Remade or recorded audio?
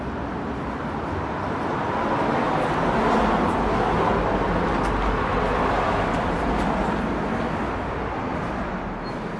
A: recorded